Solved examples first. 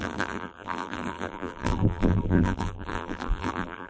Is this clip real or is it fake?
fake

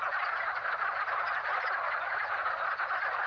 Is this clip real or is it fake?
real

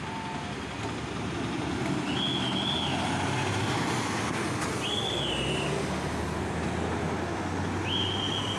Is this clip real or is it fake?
real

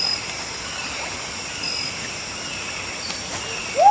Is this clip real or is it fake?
real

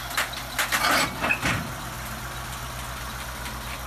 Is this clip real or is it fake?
real